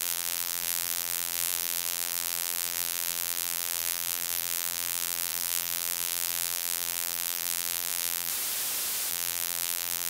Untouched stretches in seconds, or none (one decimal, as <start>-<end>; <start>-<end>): 8.3-9.1

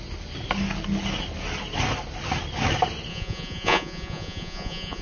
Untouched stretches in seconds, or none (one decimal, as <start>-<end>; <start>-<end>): 0.0-3.1